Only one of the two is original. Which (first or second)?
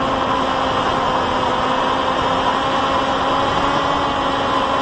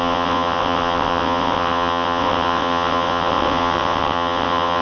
first